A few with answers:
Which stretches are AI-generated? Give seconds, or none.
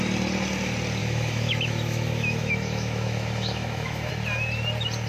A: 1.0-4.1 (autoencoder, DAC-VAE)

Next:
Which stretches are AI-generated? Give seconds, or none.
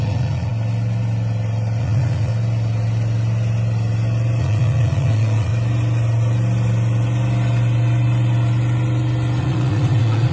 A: 0.0-0.5 (vocoder, Vocos); 1.8-2.3; 4.4-5.5; 9.4-10.3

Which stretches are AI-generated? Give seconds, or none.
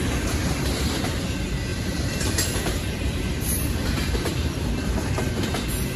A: 0.4-1.0 (vocoder, BigVGAN v2); 1.7-5.3